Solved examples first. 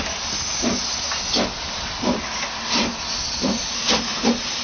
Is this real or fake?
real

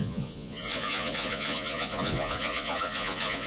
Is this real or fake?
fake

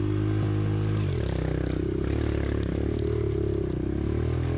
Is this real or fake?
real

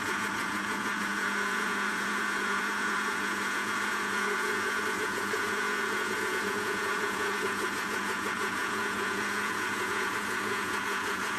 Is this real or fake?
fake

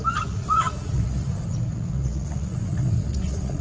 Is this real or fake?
fake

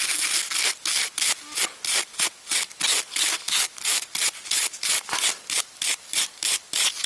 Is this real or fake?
real